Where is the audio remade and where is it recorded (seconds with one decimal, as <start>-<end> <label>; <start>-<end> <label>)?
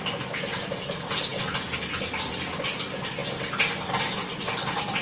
0.0-5.0 recorded